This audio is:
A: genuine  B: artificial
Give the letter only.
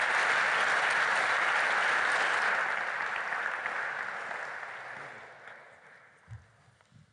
A